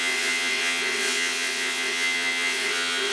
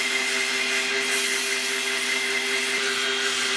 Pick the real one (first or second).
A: second